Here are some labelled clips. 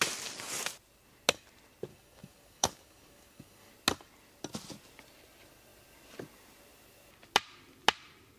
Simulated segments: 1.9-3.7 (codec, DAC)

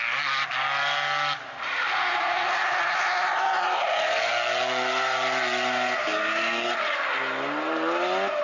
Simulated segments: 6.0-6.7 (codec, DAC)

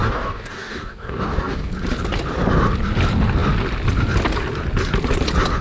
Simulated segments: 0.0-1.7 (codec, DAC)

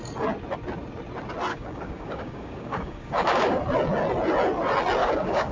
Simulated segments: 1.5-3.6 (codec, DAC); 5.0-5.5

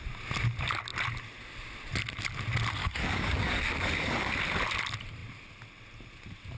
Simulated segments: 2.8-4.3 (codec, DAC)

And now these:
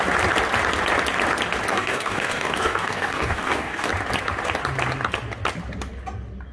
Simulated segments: 1.7-3.9 (codec, DAC)

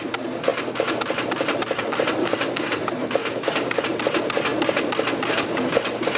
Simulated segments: 2.2-2.8 (codec, DAC); 3.2-3.8

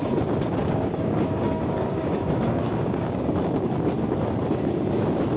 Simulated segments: 0.6-3.7 (codec, DAC)